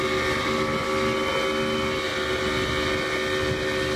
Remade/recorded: recorded